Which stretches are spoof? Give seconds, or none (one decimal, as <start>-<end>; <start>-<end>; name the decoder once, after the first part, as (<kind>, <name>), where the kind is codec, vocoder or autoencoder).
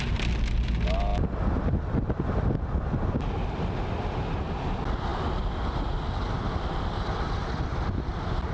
none